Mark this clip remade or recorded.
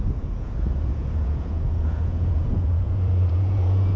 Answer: remade